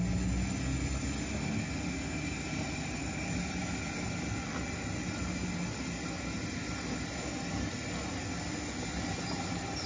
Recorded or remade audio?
recorded